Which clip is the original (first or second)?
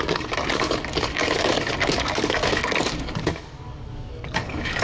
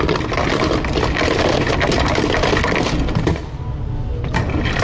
second